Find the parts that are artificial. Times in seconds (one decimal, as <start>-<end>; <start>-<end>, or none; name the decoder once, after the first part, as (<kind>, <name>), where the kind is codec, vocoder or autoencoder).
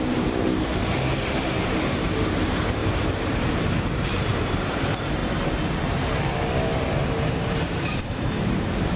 0.0-0.7 (vocoder, BigVGAN v2); 1.5-5.2; 6.9-9.0